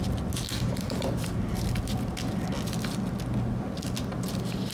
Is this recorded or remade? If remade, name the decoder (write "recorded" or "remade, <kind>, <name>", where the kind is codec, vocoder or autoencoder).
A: recorded